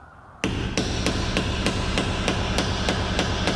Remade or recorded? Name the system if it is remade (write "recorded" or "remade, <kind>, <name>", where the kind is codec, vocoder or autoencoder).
recorded